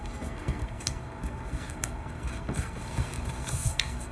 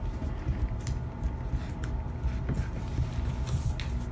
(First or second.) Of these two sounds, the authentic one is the second